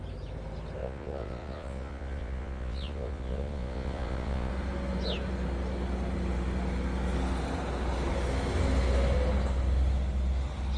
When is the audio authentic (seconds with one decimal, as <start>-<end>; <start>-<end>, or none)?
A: 0.0-0.8; 4.5-10.8